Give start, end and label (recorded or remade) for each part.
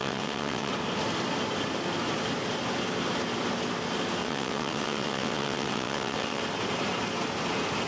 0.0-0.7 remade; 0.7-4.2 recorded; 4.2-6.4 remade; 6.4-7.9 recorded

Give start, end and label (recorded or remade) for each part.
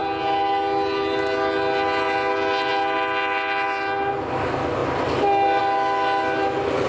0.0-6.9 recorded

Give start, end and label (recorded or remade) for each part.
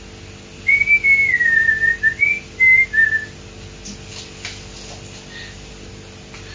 0.0-6.5 recorded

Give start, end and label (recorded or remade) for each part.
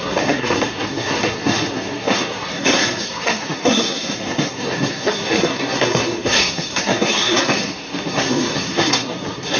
0.0-9.6 remade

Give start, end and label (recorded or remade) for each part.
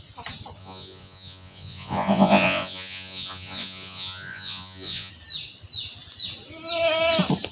0.0-0.6 recorded; 0.6-5.1 remade; 5.1-7.5 recorded